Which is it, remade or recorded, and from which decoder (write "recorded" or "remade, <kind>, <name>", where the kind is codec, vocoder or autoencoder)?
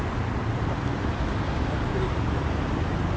recorded